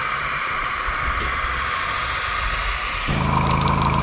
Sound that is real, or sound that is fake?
fake